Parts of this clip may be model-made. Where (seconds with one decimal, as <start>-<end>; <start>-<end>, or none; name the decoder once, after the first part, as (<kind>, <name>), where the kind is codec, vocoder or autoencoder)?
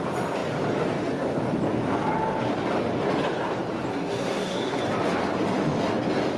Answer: 3.9-4.8 (codec, SNAC)